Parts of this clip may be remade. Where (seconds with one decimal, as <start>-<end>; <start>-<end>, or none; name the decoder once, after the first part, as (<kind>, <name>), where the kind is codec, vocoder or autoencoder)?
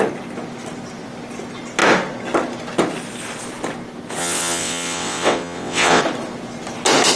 4.2-6.0 (vocoder, WaveNeXt)